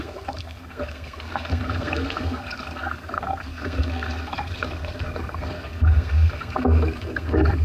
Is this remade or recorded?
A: remade